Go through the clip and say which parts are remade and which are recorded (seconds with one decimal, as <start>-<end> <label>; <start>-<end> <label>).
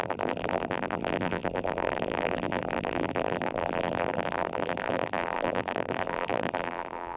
0.0-7.2 remade